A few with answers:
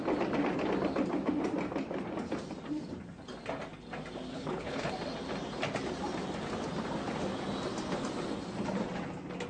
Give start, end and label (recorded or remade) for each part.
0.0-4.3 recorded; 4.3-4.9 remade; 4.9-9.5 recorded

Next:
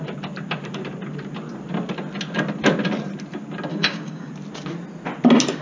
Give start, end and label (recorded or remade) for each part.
0.0-3.7 recorded; 3.7-4.3 remade; 4.3-5.6 recorded

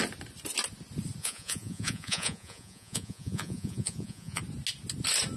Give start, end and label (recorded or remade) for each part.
0.0-1.2 recorded; 1.2-4.4 remade; 4.4-5.4 recorded

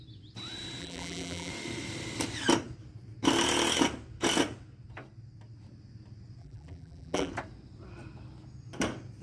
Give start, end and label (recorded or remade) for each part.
0.0-0.8 recorded; 0.8-1.5 remade; 1.5-6.4 recorded; 6.4-7.3 remade; 7.3-9.2 recorded